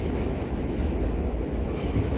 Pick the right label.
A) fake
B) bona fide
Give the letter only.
A